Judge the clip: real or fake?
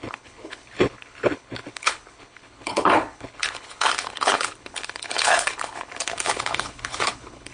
fake